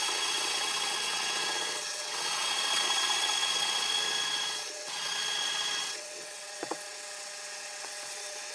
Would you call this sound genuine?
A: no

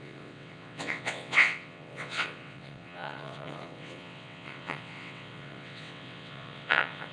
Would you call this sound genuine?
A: no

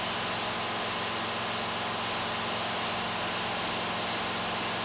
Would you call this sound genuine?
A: yes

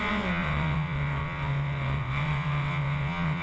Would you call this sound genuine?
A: no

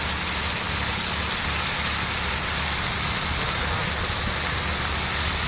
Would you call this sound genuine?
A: yes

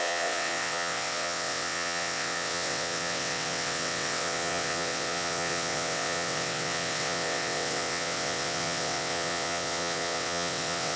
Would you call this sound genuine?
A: no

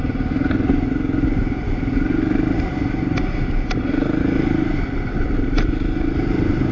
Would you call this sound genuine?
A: yes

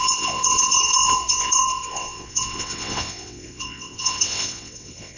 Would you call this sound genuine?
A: no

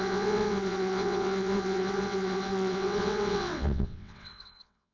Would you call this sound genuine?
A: no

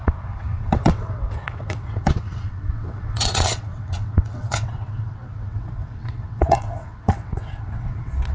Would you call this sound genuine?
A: no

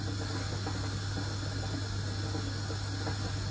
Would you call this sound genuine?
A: yes